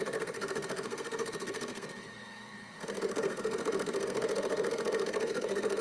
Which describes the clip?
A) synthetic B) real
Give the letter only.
A